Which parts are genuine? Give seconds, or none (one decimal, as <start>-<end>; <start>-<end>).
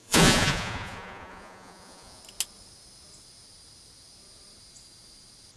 2.2-5.6